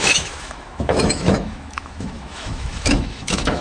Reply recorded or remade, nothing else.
remade